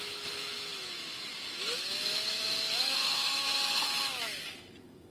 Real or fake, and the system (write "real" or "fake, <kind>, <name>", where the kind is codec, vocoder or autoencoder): fake, autoencoder, DAC-VAE